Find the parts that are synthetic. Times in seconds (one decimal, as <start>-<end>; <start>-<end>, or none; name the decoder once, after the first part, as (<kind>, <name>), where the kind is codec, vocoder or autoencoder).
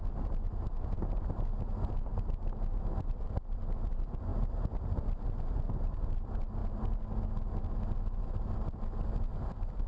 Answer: 0.0-2.1 (vocoder, BigVGAN v2); 3.0-4.3; 5.7-6.6; 9.1-9.9